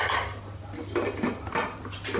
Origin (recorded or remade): recorded